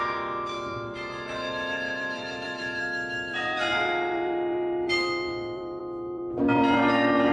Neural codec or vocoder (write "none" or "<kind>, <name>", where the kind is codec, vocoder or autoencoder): vocoder, BigVGAN v2